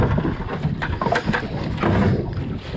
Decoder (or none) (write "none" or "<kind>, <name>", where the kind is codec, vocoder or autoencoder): none